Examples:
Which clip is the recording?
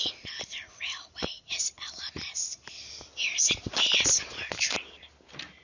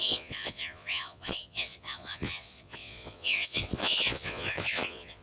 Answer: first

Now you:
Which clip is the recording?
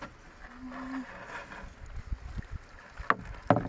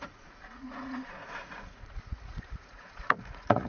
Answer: first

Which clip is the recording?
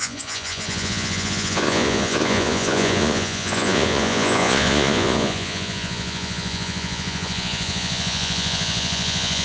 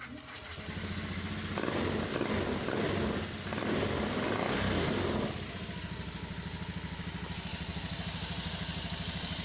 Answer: second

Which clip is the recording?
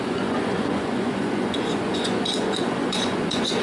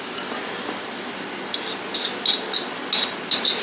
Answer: second